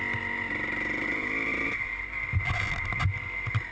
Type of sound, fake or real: real